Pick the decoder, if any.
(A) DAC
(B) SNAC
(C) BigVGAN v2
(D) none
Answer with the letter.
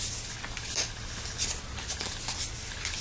D